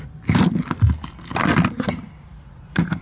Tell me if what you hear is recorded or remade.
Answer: recorded